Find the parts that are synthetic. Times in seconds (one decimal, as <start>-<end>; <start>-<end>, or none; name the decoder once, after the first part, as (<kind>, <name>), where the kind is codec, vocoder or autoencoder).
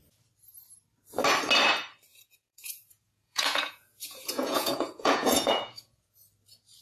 2.1-6.2 (vocoder, Vocos)